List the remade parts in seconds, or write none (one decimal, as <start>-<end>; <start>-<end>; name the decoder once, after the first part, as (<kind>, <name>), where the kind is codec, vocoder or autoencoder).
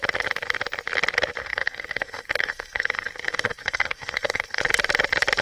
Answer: 1.4-4.6 (codec, SNAC)